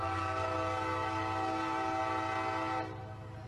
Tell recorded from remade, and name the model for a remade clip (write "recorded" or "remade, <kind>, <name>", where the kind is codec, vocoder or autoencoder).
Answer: recorded